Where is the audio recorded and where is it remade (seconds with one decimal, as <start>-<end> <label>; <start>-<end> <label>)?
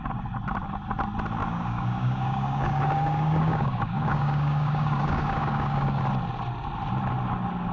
0.0-1.4 recorded; 1.4-6.0 remade; 6.0-7.7 recorded